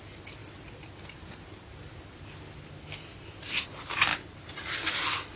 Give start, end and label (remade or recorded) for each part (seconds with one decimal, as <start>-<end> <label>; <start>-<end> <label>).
0.0-5.4 recorded